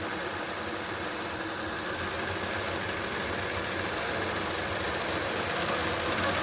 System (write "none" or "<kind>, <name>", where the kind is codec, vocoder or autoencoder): none